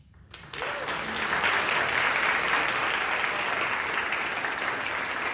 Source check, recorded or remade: recorded